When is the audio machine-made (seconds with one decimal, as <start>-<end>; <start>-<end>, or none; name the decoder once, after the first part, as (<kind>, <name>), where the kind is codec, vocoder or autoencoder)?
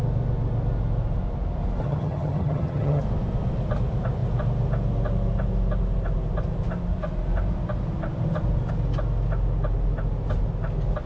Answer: 1.8-3.0 (vocoder, HiFi-GAN)